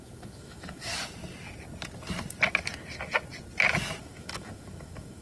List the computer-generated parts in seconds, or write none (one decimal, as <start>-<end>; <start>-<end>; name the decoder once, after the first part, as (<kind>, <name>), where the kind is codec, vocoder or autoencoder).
0.0-0.9 (autoencoder, DAC-VAE); 4.0-5.2